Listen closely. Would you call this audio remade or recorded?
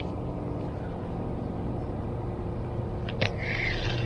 recorded